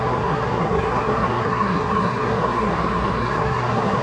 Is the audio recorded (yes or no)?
no